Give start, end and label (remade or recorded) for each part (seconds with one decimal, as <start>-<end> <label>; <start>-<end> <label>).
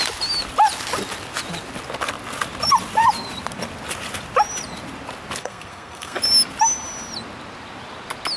0.0-5.4 recorded; 5.4-6.2 remade; 6.2-8.4 recorded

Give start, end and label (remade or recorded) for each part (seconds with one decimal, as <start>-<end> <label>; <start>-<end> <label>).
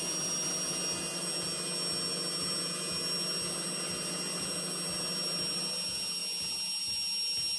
0.0-7.6 recorded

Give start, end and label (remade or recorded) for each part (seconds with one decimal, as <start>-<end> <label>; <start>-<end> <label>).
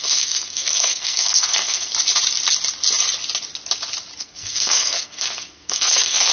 0.0-1.9 remade; 1.9-4.2 recorded; 4.2-6.3 remade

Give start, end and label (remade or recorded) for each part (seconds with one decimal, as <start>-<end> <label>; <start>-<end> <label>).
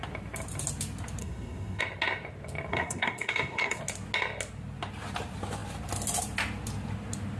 0.0-1.2 recorded; 1.2-1.8 remade; 1.8-2.7 recorded; 2.7-3.8 remade; 3.8-7.4 recorded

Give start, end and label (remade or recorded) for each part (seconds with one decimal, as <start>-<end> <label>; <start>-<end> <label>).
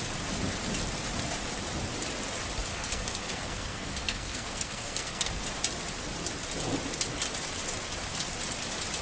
0.0-2.7 recorded; 2.7-5.4 remade; 5.4-9.0 recorded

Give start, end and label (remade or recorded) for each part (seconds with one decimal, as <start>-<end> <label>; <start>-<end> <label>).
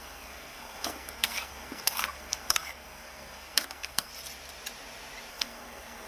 0.0-4.1 remade; 4.1-5.3 recorded; 5.3-6.1 remade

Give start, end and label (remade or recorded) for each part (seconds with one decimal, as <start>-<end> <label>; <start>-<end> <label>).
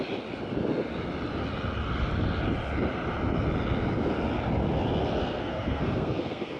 0.0-5.2 recorded; 5.2-6.6 remade